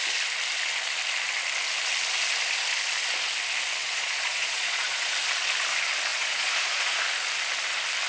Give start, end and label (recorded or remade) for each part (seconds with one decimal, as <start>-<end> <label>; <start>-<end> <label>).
0.0-3.8 recorded; 3.8-5.1 remade; 5.1-6.1 recorded; 6.1-7.0 remade; 7.0-8.1 recorded